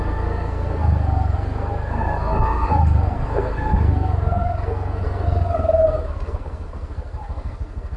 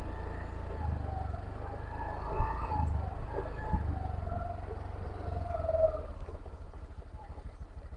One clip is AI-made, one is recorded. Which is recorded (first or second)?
second